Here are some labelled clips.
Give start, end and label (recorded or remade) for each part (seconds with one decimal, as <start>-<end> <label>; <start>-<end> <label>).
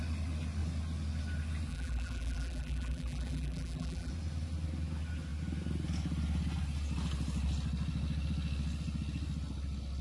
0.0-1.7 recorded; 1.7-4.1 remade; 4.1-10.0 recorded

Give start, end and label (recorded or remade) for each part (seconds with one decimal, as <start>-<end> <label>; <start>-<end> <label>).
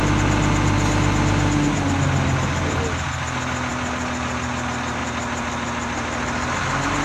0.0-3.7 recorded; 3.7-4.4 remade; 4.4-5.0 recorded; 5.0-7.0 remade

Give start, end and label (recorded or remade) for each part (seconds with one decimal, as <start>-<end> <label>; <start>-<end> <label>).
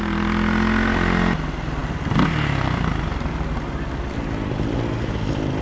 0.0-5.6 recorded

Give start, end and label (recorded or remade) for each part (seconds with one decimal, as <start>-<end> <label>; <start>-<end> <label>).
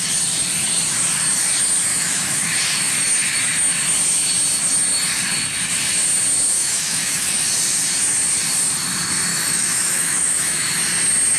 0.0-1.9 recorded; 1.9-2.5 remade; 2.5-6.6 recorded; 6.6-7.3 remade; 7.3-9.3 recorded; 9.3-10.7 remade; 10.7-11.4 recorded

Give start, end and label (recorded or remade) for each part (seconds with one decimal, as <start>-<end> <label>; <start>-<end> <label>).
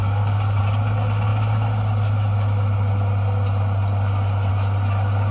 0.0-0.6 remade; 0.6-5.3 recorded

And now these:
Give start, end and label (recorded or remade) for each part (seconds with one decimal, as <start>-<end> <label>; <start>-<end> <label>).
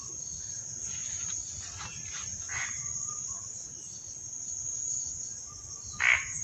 0.0-6.4 recorded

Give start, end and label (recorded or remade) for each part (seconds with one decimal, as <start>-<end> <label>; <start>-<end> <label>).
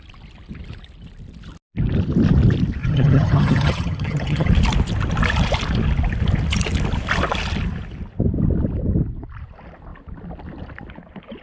0.0-2.8 recorded; 2.8-4.5 remade; 4.5-11.4 recorded